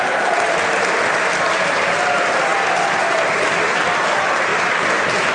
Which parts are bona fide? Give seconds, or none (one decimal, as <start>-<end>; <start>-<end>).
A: 0.0-5.3